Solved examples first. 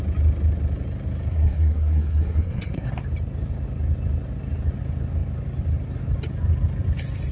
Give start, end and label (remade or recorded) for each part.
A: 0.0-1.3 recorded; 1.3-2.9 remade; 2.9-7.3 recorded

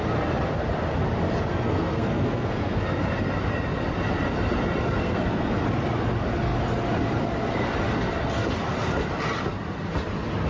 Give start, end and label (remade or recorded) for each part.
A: 0.0-1.5 recorded; 1.5-2.8 remade; 2.8-5.0 recorded; 5.0-5.6 remade; 5.6-10.5 recorded

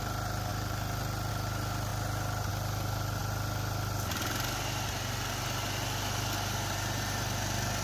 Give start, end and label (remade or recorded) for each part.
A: 0.0-7.8 recorded

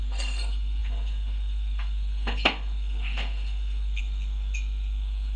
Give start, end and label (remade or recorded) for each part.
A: 0.0-5.4 remade

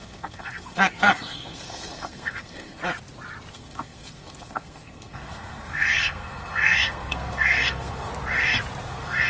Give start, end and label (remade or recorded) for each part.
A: 0.0-2.8 remade; 2.8-3.5 recorded; 3.5-8.1 remade; 8.1-8.8 recorded; 8.8-9.3 remade

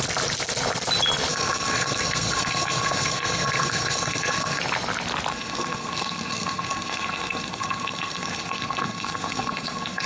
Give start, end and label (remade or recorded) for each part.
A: 0.0-1.3 recorded; 1.3-4.6 remade; 4.6-5.3 recorded; 5.3-10.1 remade

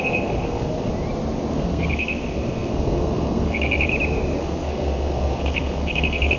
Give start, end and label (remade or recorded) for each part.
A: 0.0-0.9 remade; 0.9-1.5 recorded; 1.5-3.9 remade; 3.9-4.4 recorded; 4.4-6.4 remade